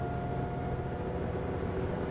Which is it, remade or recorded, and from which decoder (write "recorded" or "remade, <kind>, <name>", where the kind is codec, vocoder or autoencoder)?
recorded